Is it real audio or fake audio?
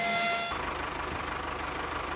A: real